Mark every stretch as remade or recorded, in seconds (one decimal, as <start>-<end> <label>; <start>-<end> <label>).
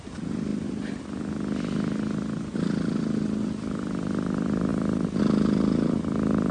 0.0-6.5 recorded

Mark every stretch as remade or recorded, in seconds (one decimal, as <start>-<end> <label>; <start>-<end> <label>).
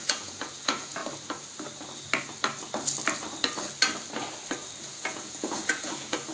0.0-1.0 remade; 1.0-4.8 recorded; 4.8-6.3 remade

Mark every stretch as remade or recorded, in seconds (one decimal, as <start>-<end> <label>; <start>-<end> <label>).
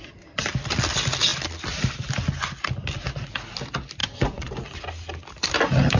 0.0-4.0 recorded; 4.0-4.5 remade; 4.5-6.0 recorded